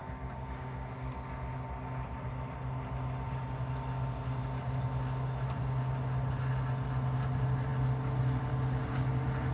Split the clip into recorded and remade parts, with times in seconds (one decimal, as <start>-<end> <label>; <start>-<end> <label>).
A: 0.0-0.9 remade; 0.9-9.5 recorded